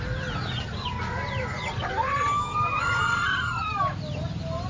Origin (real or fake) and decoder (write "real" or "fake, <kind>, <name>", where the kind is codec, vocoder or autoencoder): real